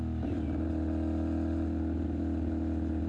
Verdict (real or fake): real